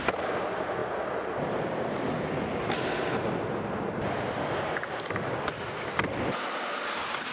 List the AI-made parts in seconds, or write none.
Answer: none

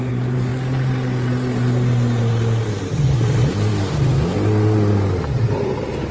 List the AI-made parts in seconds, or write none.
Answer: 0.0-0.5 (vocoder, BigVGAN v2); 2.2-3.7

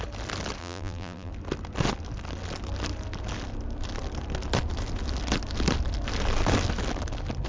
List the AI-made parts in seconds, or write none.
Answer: 0.6-1.3 (vocoder, BigVGAN v2)

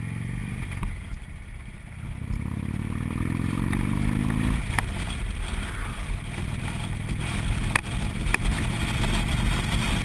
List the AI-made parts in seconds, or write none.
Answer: 0.4-4.2 (vocoder, BigVGAN v2); 5.9-6.6; 7.8-8.4

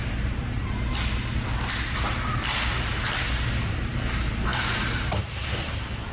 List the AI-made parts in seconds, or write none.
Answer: 0.0-0.9 (vocoder, BigVGAN v2); 3.6-4.5; 5.1-6.1

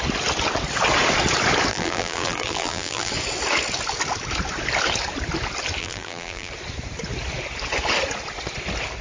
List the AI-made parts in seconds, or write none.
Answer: 1.7-3.1 (vocoder, BigVGAN v2); 5.8-6.5

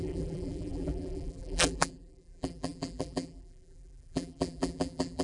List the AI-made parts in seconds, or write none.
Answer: 0.0-5.2 (vocoder, BigVGAN v2)

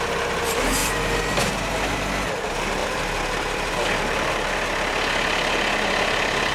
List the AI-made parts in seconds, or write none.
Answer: 0.8-1.5 (vocoder, BigVGAN v2); 2.8-3.7